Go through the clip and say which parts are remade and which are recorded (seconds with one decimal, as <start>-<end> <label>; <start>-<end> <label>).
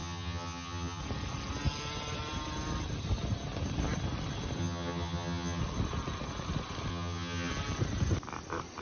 0.0-1.0 remade; 1.0-4.6 recorded; 4.6-5.6 remade; 5.6-6.9 recorded; 6.9-7.5 remade; 7.5-8.8 recorded